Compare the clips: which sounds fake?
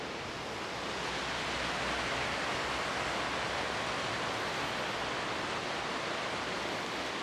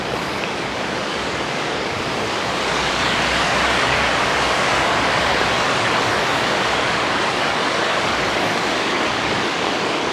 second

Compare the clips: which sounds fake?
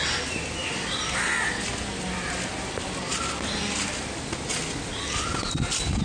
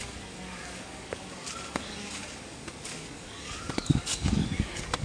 second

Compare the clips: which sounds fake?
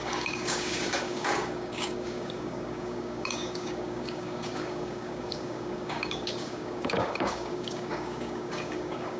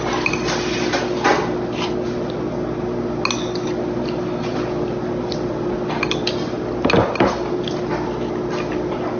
first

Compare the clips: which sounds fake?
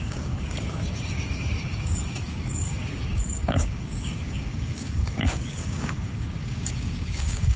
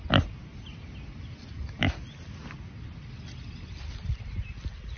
first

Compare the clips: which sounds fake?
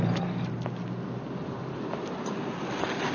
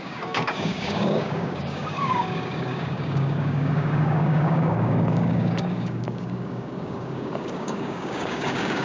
second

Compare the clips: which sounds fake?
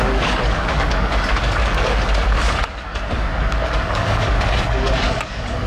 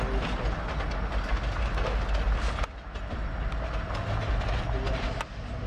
first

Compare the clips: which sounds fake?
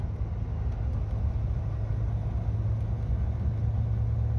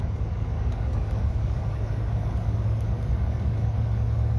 second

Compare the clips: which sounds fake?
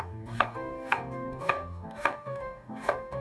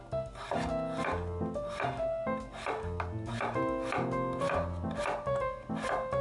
first